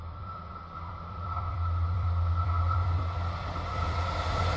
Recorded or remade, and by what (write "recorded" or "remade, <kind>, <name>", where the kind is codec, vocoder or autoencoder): remade, vocoder, BigVGAN v2